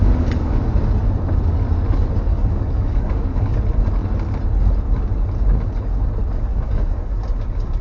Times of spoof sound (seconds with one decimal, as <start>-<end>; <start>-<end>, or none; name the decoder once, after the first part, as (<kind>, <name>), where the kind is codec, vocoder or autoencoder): 0.0-0.5 (codec, DAC); 2.3-3.6; 6.5-7.2